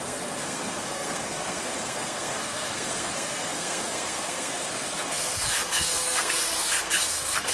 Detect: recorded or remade remade